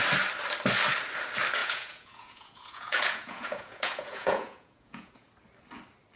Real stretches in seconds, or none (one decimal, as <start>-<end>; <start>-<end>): 0.0-1.6; 5.3-6.2